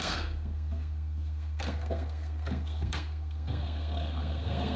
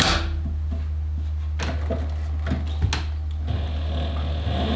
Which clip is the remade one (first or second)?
first